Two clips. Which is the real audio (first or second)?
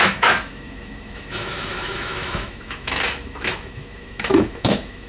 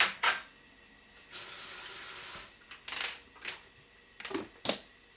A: second